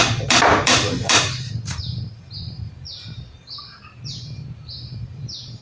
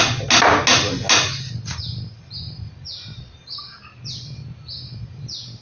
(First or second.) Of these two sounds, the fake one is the first